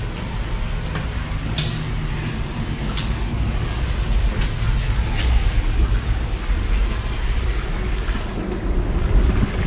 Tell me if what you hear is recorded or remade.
recorded